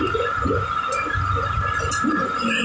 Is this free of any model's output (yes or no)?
yes